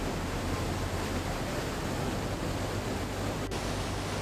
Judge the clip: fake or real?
real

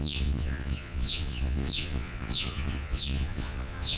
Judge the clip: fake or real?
fake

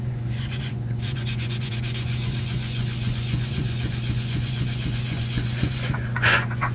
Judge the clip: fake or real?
fake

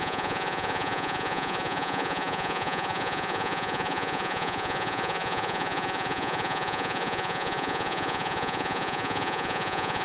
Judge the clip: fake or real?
fake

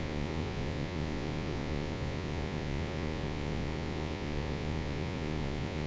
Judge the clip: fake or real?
fake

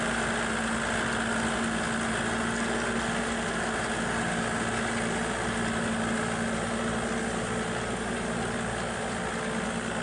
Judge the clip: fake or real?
real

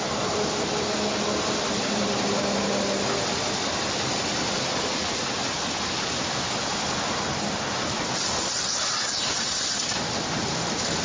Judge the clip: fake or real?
real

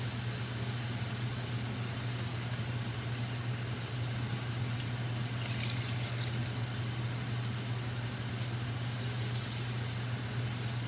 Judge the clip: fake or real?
real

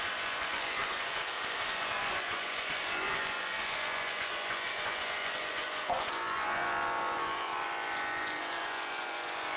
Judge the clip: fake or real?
fake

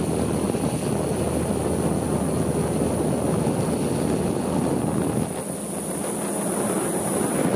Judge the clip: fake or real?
real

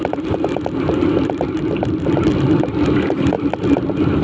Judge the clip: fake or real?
real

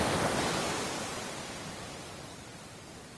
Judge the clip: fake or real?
real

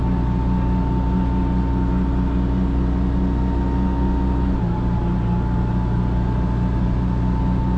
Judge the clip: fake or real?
real